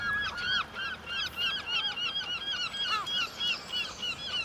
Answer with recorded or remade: recorded